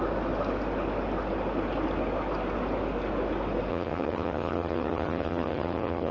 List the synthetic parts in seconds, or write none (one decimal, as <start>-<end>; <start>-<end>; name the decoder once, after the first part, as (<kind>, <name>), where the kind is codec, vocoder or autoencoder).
3.7-6.1 (vocoder, HiFi-GAN)